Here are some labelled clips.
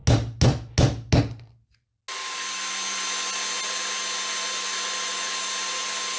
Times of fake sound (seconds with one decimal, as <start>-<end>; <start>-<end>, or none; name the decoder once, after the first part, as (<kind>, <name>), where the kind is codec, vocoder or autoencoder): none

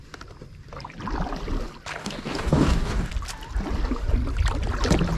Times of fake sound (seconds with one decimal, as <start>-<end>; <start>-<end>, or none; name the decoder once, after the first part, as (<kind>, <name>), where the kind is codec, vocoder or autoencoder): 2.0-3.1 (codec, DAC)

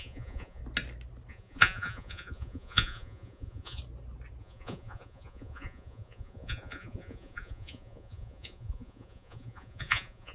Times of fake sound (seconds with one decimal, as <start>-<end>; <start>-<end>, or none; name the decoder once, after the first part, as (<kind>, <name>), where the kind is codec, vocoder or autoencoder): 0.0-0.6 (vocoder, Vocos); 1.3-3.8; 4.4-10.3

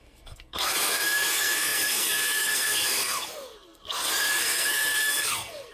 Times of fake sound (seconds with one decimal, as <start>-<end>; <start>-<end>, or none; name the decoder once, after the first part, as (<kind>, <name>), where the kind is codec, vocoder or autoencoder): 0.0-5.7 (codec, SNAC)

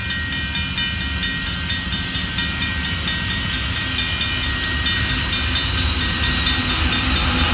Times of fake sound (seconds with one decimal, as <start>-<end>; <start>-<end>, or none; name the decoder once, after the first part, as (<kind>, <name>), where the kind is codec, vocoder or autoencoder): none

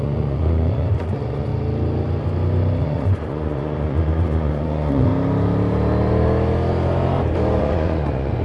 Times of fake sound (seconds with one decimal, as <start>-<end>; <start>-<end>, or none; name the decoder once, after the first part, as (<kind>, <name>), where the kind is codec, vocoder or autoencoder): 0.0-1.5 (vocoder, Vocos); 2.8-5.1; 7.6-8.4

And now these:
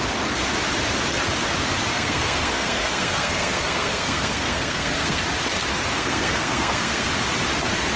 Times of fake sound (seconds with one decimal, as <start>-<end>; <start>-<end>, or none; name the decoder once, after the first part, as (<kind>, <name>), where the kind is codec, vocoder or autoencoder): 1.9-5.2 (codec, SNAC); 5.9-7.1

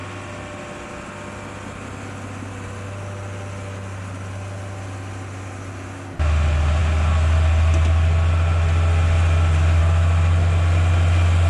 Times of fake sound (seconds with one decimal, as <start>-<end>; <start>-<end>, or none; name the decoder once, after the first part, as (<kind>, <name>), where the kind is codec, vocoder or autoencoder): none